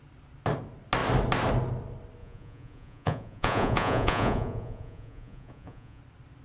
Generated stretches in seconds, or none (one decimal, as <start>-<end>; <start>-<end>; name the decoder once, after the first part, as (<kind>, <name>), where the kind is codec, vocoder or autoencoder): 2.2-6.0 (vocoder, Vocos)